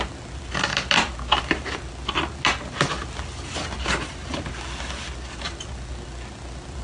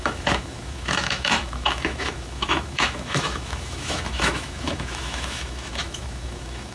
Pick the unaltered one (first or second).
first